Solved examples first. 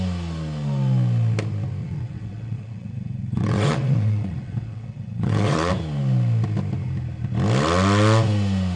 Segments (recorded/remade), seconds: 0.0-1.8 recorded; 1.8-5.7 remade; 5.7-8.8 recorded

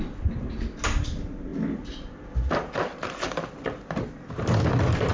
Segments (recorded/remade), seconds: 0.0-5.1 recorded

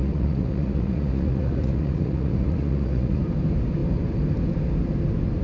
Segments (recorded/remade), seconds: 0.0-3.2 remade; 3.2-5.4 recorded

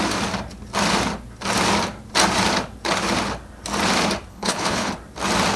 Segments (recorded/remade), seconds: 0.0-4.3 recorded; 4.3-4.9 remade; 4.9-5.6 recorded

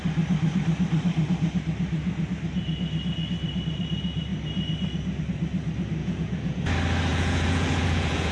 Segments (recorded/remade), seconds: 0.0-6.0 recorded; 6.0-6.6 remade; 6.6-7.1 recorded; 7.1-8.3 remade

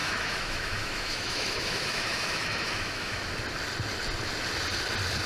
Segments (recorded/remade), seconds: 0.0-3.2 remade; 3.2-5.3 recorded